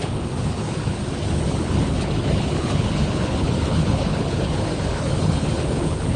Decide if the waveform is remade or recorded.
remade